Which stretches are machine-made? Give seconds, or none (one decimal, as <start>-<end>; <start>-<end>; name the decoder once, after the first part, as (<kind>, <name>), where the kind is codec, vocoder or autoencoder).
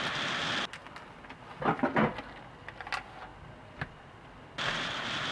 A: none